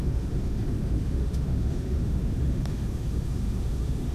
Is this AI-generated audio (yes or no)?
yes